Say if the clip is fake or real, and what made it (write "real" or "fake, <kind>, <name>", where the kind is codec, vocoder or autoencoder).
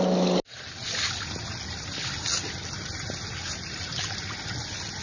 real